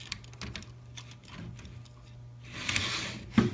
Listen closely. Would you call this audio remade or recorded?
recorded